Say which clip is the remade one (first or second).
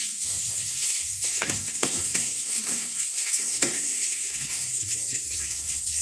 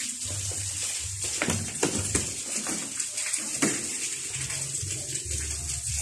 first